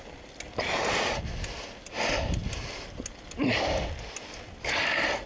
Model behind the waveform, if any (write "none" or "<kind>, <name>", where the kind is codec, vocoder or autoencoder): none